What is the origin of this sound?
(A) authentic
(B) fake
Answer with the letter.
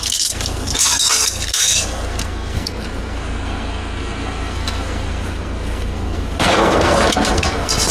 B